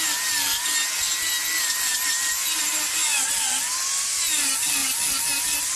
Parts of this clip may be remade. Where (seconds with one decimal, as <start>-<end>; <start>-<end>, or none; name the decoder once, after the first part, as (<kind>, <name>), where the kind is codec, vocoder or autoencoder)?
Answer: none